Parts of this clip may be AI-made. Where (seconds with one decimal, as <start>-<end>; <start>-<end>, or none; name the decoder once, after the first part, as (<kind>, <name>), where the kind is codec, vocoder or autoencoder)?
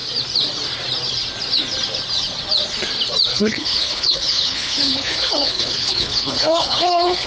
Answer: 3.3-7.3 (codec, HILCodec)